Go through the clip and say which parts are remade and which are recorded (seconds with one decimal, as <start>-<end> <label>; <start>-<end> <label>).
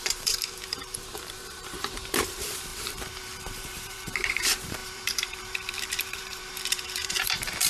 0.0-7.7 remade